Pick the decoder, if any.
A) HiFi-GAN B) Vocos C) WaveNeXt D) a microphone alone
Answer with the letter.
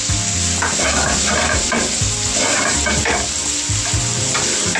D